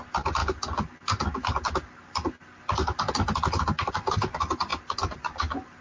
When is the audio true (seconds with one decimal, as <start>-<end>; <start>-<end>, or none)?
0.0-5.8